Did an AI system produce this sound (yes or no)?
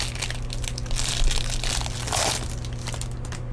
no